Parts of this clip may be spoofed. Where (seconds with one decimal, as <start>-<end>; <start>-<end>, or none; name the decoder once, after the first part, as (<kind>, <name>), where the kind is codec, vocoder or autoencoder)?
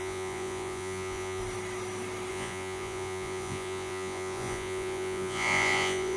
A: 0.0-1.4 (vocoder, Vocos); 2.3-6.2